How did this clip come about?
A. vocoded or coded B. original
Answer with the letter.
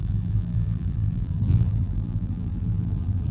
A